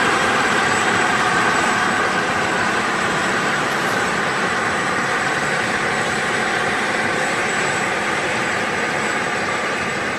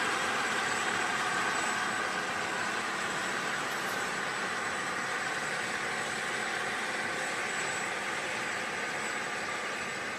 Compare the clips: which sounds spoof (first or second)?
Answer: first